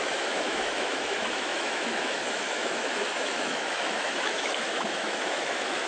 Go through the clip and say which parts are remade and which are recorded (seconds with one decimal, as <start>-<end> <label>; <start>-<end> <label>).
0.0-5.9 remade